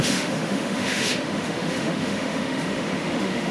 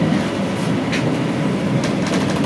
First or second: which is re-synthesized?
first